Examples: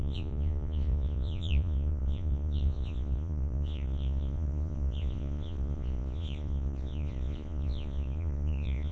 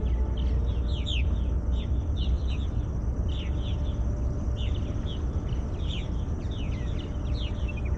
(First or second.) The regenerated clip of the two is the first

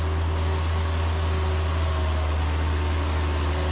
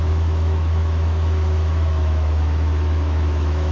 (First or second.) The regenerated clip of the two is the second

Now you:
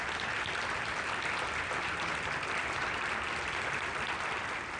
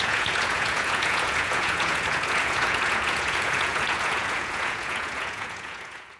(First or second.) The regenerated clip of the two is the second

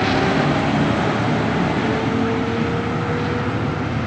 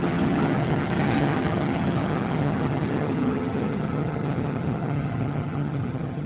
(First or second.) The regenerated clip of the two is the second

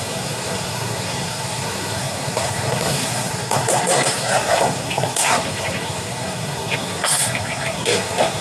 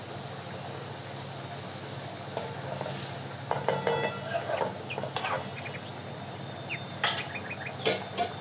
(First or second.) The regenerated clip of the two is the first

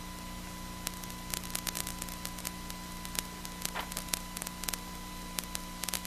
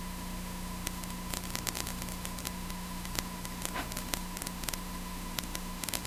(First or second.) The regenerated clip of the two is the second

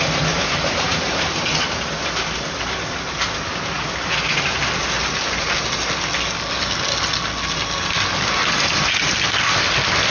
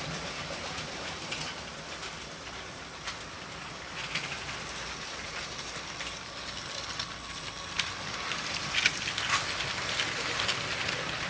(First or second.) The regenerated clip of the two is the second